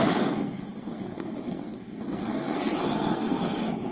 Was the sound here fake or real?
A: fake